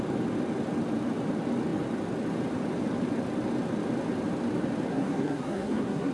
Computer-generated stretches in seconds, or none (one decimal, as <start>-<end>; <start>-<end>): 4.9-6.1